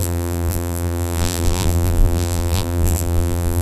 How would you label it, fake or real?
fake